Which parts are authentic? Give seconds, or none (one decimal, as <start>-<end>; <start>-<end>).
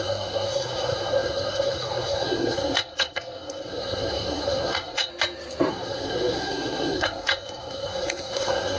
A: 5.1-5.7